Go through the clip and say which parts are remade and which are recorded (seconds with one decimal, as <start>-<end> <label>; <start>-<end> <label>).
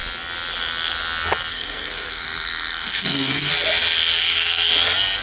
0.0-1.5 recorded; 1.5-3.5 remade; 3.5-4.2 recorded; 4.2-4.7 remade; 4.7-5.2 recorded